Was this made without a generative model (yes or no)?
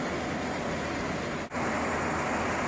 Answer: yes